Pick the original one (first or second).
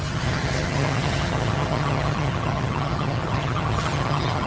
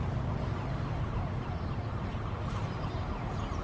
second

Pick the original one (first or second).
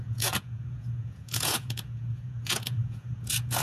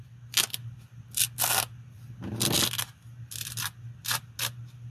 second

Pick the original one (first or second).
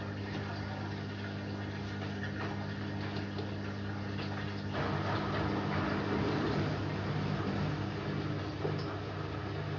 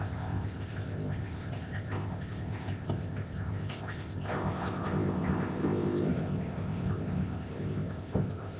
first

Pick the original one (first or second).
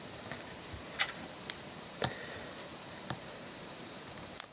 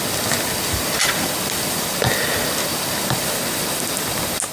second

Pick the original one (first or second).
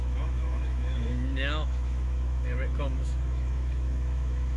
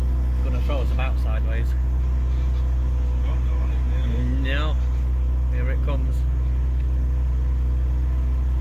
second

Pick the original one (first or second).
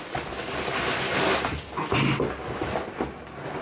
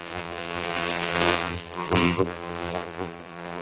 first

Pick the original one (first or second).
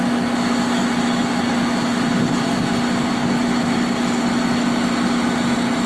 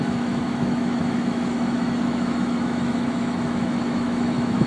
first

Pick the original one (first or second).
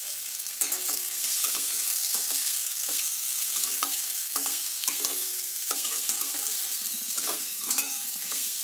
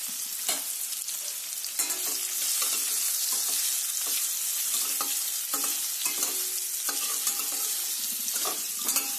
second